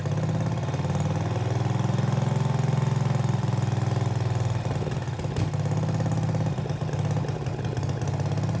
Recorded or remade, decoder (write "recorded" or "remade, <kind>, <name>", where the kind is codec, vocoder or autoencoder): recorded